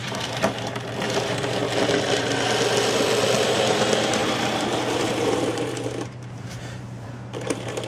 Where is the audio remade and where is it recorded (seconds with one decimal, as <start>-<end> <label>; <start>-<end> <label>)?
0.0-1.6 remade; 1.6-3.4 recorded; 3.4-7.9 remade